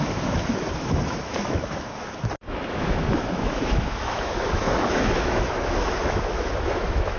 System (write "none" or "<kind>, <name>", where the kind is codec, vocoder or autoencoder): autoencoder, DAC-VAE